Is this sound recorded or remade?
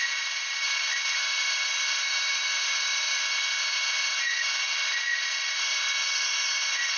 remade